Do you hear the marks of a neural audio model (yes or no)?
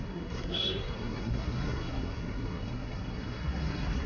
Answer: yes